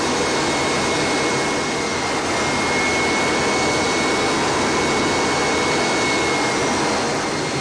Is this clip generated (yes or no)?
no